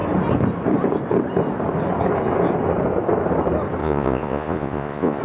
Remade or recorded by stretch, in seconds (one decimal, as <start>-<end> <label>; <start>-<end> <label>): 0.0-3.8 recorded; 3.8-5.2 remade